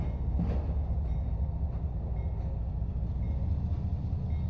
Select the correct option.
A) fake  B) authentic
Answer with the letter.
B